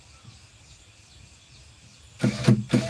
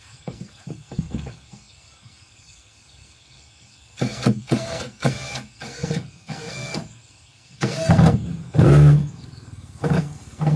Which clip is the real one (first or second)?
first